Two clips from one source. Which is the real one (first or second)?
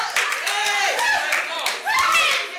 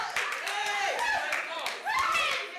first